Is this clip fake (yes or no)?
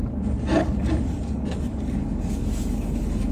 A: yes